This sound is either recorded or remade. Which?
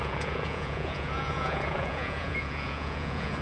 remade